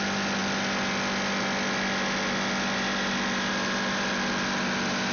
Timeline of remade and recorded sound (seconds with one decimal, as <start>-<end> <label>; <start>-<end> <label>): 0.0-5.1 recorded